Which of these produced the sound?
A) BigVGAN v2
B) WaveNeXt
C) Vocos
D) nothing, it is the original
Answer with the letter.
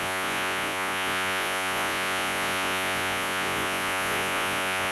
C